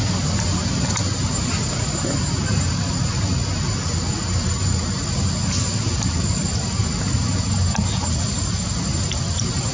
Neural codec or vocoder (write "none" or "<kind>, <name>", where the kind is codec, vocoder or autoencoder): none